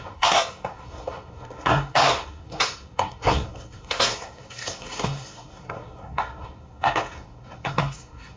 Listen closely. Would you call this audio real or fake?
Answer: fake